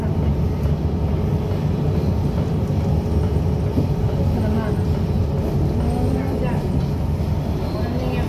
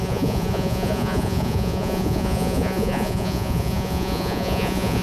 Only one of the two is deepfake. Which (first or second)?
second